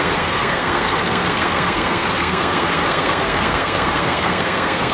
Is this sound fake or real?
fake